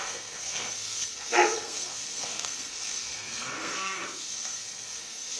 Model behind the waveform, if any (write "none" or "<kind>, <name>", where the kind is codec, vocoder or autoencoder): codec, SNAC